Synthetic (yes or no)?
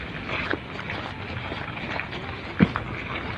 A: no